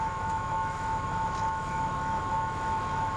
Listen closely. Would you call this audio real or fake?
fake